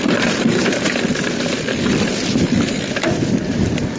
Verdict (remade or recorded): recorded